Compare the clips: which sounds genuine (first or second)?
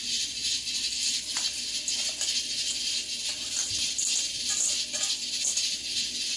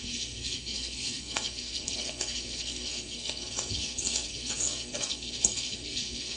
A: first